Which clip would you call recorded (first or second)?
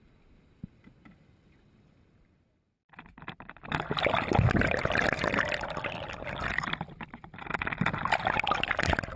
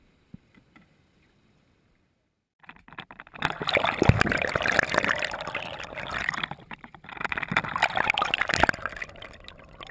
first